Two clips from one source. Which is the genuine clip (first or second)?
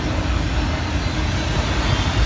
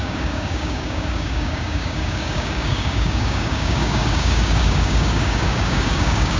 first